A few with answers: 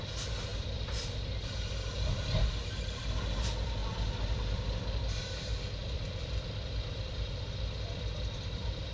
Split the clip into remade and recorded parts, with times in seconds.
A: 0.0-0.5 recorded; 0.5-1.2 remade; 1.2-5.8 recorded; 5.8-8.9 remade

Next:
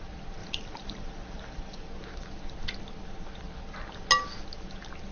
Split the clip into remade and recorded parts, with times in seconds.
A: 0.0-0.4 recorded; 0.4-1.8 remade; 1.8-5.1 recorded

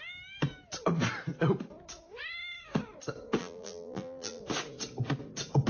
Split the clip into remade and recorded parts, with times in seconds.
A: 0.0-3.4 recorded; 3.4-4.4 remade; 4.4-5.7 recorded

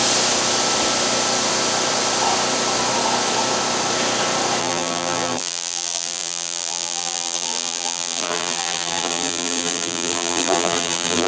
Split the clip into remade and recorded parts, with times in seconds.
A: 0.0-4.6 recorded; 4.6-11.3 remade

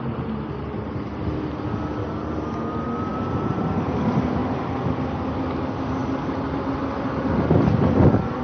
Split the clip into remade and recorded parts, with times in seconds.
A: 0.0-3.1 recorded; 3.1-3.7 remade; 3.7-8.4 recorded

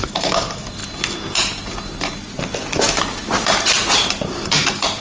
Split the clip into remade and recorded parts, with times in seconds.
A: 0.0-0.8 remade; 0.8-3.0 recorded; 3.0-5.0 remade

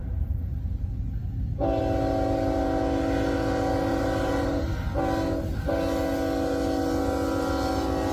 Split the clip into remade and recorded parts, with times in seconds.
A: 0.0-0.6 remade; 0.6-3.9 recorded; 3.9-4.8 remade; 4.8-8.1 recorded